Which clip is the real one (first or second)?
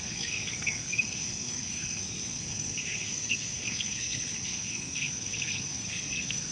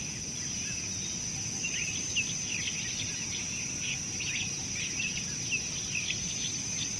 second